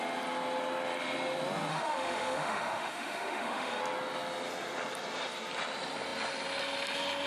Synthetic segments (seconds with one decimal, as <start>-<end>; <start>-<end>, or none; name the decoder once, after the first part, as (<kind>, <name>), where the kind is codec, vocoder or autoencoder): 1.7-3.8 (autoencoder, DAC-VAE)